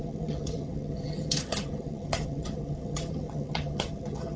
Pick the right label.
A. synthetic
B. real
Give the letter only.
A